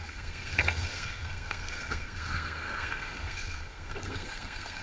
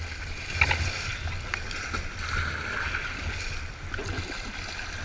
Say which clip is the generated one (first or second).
first